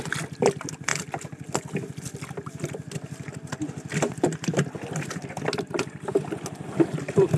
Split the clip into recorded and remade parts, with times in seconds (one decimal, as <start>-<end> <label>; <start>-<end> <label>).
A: 0.0-7.4 recorded